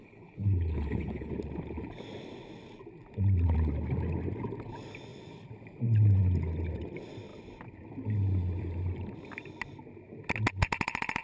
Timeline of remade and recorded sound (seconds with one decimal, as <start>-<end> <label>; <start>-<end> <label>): 0.0-1.3 remade; 1.3-11.2 recorded